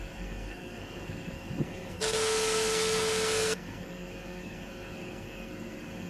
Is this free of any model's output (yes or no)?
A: no